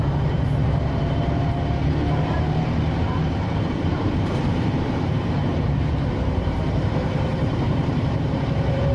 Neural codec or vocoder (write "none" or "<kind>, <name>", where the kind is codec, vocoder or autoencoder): vocoder, BigVGAN v2